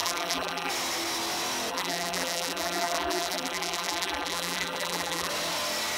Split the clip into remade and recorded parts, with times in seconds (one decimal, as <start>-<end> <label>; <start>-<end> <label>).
0.0-0.7 remade; 0.7-1.7 recorded; 1.7-5.3 remade; 5.3-6.0 recorded